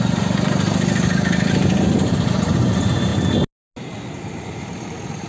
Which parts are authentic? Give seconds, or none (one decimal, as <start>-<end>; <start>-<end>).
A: 3.1-4.2